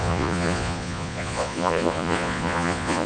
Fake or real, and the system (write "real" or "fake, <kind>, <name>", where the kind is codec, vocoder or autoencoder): fake, vocoder, Vocos